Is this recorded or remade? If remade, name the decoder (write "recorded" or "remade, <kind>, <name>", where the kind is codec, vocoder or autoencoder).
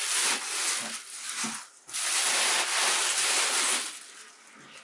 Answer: recorded